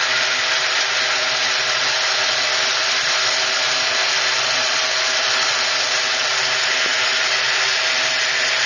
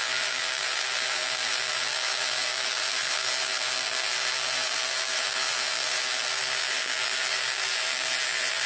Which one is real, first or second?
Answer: first